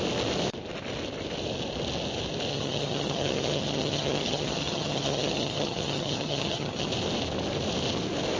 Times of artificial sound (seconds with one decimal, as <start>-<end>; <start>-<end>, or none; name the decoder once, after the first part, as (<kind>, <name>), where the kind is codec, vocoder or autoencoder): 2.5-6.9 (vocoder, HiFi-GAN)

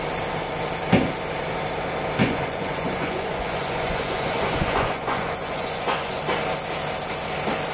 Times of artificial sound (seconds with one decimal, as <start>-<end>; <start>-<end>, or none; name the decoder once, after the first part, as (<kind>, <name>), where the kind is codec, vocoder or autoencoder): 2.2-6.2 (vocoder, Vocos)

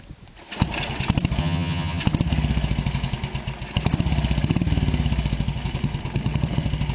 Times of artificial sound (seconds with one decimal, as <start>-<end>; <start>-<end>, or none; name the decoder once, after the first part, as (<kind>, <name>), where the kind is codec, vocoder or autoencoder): 1.4-2.0 (vocoder, HiFi-GAN)

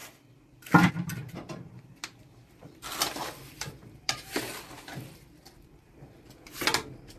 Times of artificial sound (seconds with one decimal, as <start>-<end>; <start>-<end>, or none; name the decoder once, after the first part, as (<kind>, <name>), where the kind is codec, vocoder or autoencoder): 2.4-6.4 (vocoder, BigVGAN v2)

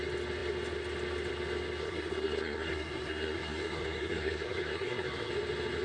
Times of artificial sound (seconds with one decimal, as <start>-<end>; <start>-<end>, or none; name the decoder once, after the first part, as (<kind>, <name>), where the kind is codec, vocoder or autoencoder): 1.8-5.3 (codec, SNAC)

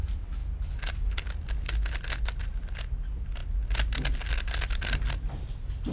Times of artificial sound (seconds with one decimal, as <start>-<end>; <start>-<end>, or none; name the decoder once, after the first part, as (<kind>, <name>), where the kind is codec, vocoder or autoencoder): none

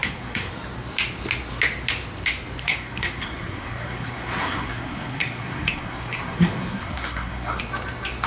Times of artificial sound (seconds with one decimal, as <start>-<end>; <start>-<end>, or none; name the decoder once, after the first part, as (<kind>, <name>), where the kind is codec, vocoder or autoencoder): 0.0-0.5 (codec, SNAC); 2.6-7.6